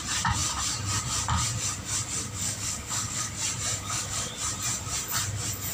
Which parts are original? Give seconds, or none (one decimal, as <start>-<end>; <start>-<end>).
0.0-2.4; 3.3-3.7; 4.3-5.7